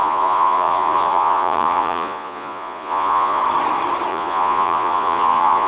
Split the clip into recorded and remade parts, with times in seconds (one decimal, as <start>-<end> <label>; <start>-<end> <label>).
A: 0.0-3.4 remade; 3.4-4.1 recorded; 4.1-5.7 remade